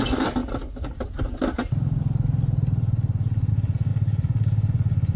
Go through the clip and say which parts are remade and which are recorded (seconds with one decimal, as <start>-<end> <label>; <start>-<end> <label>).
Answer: 0.0-5.2 recorded